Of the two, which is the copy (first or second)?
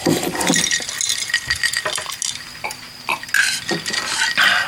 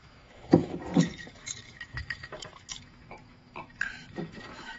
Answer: second